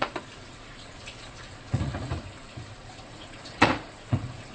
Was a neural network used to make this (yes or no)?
yes